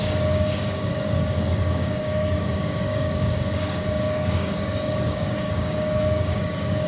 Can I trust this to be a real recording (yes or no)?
no